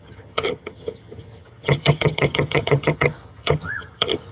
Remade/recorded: remade